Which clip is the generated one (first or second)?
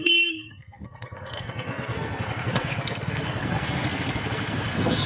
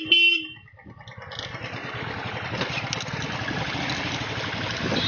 first